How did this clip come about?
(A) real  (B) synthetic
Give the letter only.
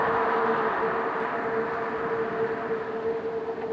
A